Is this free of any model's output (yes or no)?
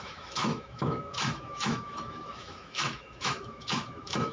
no